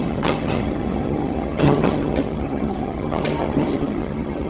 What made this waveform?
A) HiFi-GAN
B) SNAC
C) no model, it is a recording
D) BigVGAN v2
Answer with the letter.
A